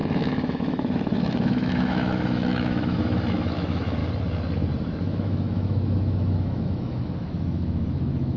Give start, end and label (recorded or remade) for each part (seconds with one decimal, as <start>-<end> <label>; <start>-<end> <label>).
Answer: 0.0-4.0 remade; 4.0-5.0 recorded; 5.0-8.4 remade